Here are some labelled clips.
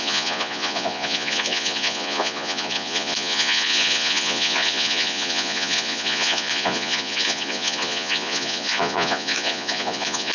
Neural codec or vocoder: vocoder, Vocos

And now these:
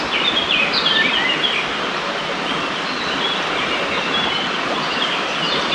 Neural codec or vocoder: none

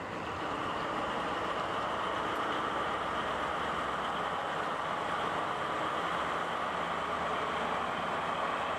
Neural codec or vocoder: none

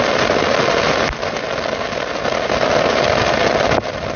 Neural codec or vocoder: none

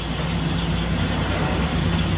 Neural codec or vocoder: none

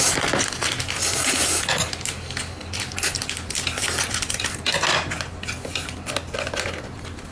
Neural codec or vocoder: none